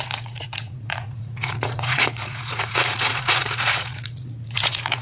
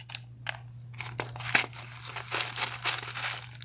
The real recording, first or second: second